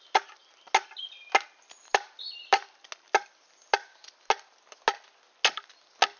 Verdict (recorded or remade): recorded